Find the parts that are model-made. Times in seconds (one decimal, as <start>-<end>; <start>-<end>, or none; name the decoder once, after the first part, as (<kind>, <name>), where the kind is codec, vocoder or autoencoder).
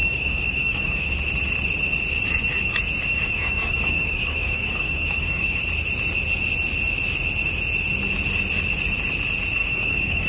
0.0-1.1 (codec, DAC); 3.1-5.6; 9.6-10.3